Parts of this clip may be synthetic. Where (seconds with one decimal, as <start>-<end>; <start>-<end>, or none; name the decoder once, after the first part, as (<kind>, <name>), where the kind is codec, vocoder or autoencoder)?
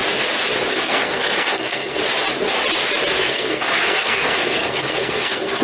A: 0.7-2.0 (codec, SNAC); 3.2-5.6